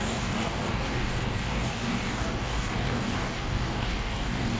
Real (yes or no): no